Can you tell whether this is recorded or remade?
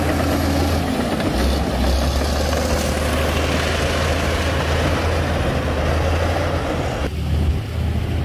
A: recorded